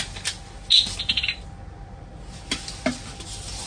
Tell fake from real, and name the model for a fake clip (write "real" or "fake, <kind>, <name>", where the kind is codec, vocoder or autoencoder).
real